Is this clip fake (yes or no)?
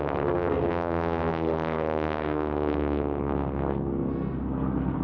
yes